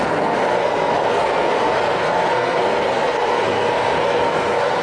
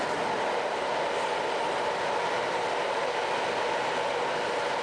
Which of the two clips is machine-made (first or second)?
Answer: first